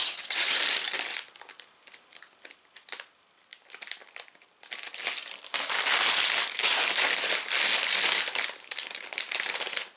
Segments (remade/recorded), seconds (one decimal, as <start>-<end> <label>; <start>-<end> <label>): 0.0-0.6 remade; 0.6-10.0 recorded